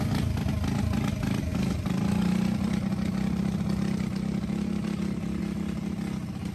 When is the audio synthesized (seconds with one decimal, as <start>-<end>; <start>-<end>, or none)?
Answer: none